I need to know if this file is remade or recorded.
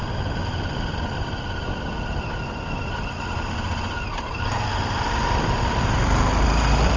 recorded